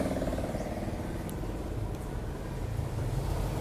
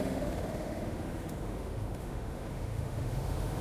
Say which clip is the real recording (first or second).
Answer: first